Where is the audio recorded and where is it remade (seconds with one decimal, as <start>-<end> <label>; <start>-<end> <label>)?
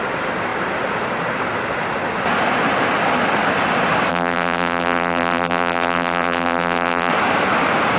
0.0-4.1 recorded; 4.1-7.1 remade; 7.1-8.0 recorded